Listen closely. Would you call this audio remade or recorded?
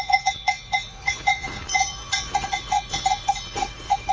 remade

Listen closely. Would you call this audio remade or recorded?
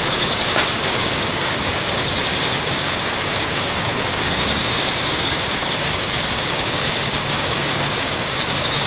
remade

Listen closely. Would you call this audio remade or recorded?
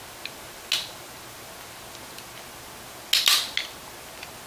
recorded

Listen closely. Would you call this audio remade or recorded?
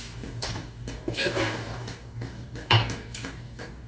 remade